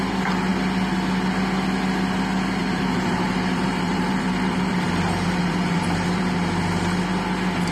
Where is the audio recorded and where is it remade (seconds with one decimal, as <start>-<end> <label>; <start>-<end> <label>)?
0.0-2.6 recorded; 2.6-6.2 remade; 6.2-7.7 recorded